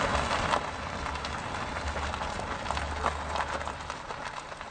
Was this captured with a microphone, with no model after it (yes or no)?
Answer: yes